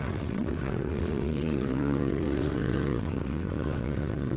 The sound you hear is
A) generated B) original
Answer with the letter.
A